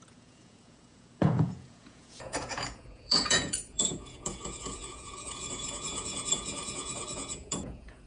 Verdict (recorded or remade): remade